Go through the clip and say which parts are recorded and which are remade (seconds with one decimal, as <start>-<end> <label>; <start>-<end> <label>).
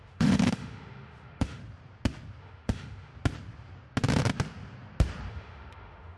0.0-1.6 remade; 1.6-2.4 recorded; 2.4-3.1 remade; 3.1-5.3 recorded; 5.3-6.2 remade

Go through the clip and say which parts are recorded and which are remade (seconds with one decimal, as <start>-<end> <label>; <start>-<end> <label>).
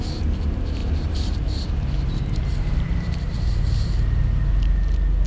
0.0-0.8 recorded; 0.8-4.0 remade; 4.0-5.3 recorded